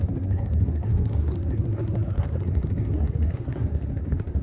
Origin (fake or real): fake